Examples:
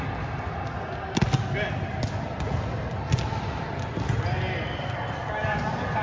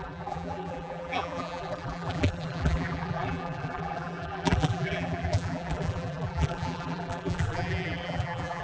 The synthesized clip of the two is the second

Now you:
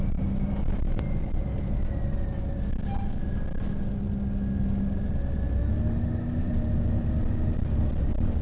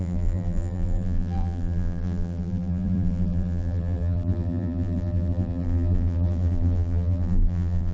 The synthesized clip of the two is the second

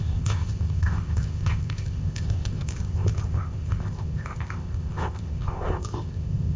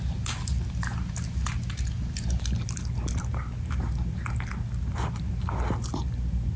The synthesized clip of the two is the first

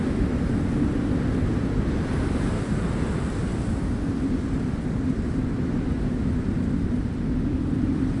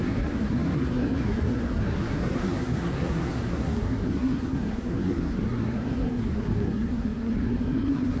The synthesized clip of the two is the second